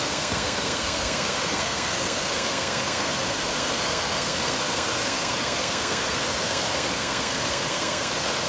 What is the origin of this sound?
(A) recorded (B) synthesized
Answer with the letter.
B